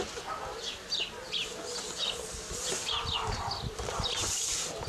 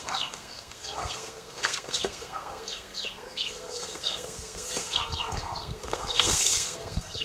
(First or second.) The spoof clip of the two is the second